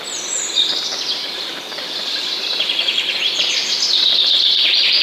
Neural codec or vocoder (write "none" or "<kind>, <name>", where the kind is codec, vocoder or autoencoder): none